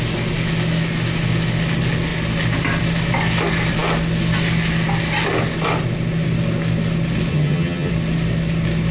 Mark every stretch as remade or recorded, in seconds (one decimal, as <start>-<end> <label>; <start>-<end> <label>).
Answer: 0.0-7.3 recorded; 7.3-7.9 remade; 7.9-8.9 recorded